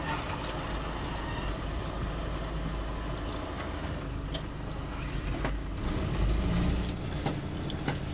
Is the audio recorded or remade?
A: recorded